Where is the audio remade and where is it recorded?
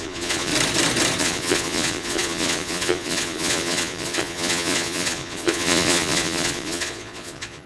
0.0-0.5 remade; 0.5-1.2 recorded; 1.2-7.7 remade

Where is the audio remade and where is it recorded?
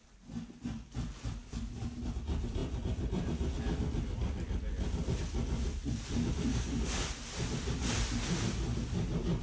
0.0-1.4 recorded; 1.4-2.0 remade; 2.0-6.5 recorded; 6.5-7.1 remade; 7.1-9.4 recorded